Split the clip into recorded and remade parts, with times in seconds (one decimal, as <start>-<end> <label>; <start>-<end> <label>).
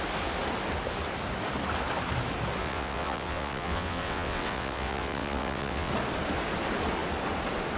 0.0-2.6 recorded; 2.6-5.9 remade; 5.9-7.8 recorded